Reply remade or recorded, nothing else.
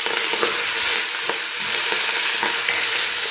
recorded